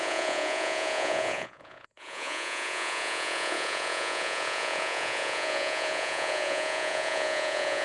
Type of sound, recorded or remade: remade